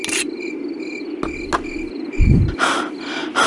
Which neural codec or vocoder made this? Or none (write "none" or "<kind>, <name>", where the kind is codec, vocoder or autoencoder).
none